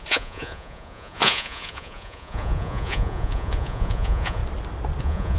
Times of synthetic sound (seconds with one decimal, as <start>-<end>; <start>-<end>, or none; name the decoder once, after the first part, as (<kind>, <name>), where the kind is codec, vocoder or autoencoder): 0.0-4.4 (vocoder, Vocos); 5.0-5.4